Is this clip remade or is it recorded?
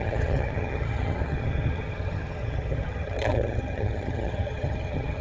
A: remade